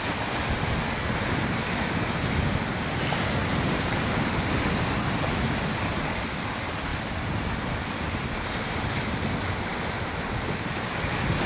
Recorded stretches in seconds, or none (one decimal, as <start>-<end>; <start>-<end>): 0.0-11.5

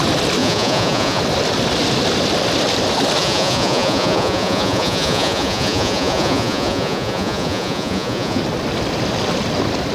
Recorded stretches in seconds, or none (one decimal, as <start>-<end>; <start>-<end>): 0.0-0.4; 1.2-3.2; 8.4-9.9

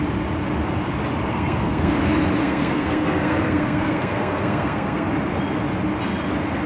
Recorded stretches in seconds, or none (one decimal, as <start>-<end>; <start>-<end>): 0.0-1.3; 1.9-2.4; 5.1-6.7

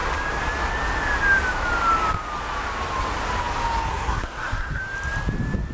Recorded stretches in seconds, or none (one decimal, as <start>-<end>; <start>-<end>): 0.0-3.9; 4.8-5.7

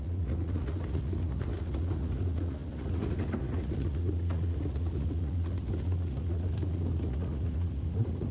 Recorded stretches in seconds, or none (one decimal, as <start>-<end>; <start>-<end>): none

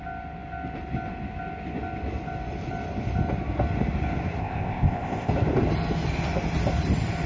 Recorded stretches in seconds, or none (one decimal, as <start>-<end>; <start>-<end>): 0.0-4.4; 5.3-7.3

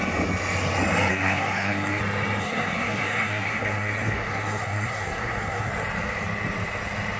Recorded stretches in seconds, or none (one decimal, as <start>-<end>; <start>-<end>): 0.0-1.1; 2.0-2.4; 5.7-7.2